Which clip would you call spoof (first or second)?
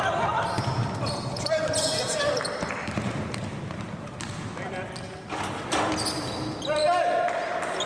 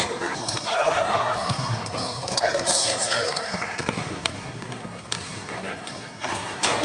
second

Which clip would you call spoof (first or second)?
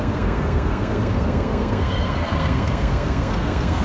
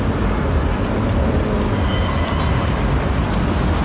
first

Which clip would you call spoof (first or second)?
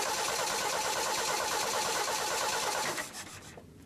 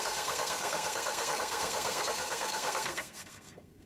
second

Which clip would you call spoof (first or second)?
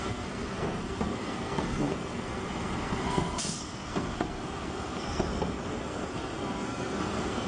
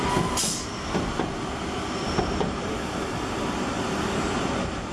first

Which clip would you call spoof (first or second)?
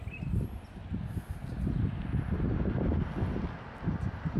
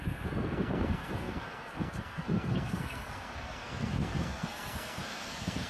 second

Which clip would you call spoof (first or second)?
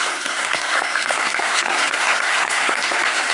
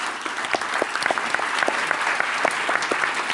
first